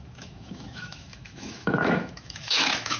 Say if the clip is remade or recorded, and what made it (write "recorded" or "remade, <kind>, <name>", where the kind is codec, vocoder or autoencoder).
remade, autoencoder, DAC-VAE